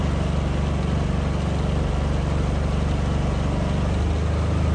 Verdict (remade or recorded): recorded